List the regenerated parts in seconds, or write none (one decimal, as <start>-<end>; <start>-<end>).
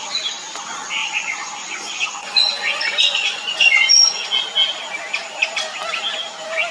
1.0-4.4